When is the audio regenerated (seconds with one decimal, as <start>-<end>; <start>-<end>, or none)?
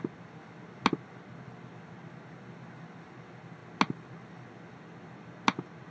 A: none